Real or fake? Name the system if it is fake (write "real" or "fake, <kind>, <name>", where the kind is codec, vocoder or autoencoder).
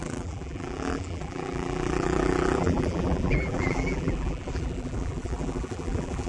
fake, vocoder, BigVGAN v2